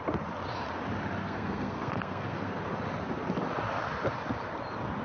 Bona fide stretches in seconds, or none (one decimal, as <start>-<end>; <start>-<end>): 0.0-1.2; 2.6-5.0